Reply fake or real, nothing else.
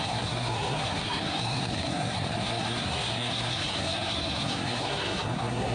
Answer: fake